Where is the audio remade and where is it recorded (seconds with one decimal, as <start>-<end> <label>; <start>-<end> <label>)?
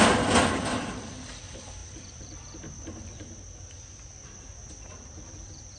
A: 0.0-5.8 recorded